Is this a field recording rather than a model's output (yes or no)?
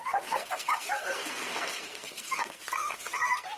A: no